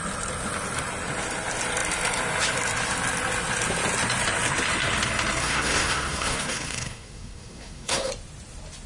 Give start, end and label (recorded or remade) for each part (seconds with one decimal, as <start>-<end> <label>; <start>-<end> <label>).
0.0-5.4 recorded; 5.4-8.1 remade; 8.1-8.9 recorded